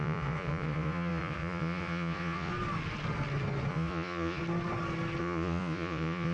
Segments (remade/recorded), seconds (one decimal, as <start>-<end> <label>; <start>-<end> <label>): 0.0-2.5 remade; 2.5-3.7 recorded; 3.7-4.4 remade; 4.4-5.2 recorded; 5.2-6.3 remade